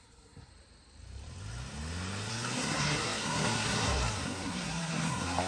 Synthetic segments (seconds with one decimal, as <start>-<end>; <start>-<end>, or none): 0.0-0.5; 2.3-5.5